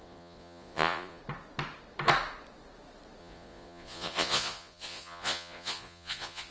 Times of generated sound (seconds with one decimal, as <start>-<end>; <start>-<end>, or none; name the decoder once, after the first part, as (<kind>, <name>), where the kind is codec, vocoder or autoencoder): 0.0-1.2 (vocoder, Vocos); 3.2-6.5